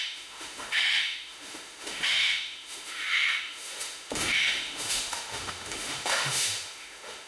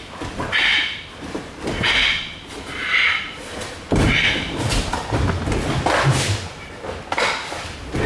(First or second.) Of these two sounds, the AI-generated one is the first